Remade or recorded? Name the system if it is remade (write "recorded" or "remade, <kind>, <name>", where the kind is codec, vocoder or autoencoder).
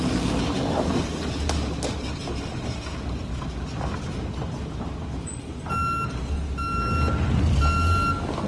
recorded